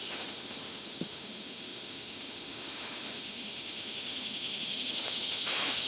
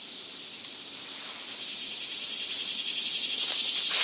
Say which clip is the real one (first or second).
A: second